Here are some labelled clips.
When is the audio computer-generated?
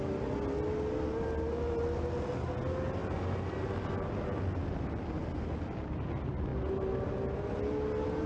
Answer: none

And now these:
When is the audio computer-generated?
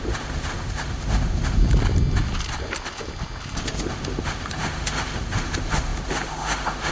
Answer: 0.0-1.6 (autoencoder, DAC-VAE); 3.6-6.9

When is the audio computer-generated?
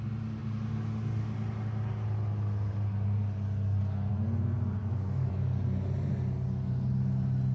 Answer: 4.8-5.3 (autoencoder, DAC-VAE)